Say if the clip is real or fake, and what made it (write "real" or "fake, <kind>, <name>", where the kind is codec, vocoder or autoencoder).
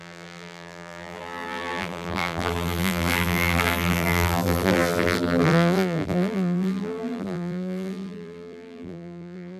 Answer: fake, vocoder, BigVGAN v2